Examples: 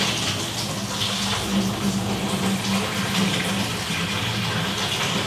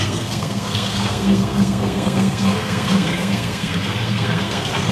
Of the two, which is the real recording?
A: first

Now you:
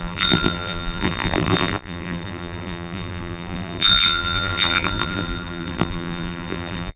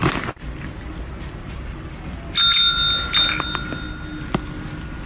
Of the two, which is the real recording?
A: second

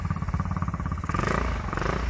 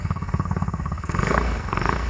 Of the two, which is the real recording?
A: first